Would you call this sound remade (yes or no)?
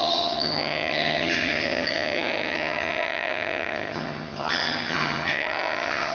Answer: yes